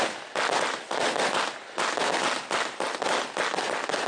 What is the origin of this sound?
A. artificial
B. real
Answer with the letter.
B